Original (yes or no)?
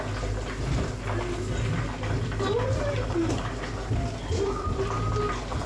yes